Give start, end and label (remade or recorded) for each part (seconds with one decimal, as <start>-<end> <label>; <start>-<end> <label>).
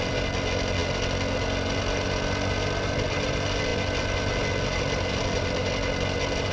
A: 0.0-6.5 recorded